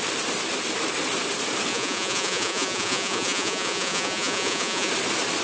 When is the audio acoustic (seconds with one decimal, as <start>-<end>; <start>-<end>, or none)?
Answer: 0.0-1.7; 4.9-5.4